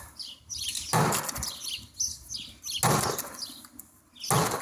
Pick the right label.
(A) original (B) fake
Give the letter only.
A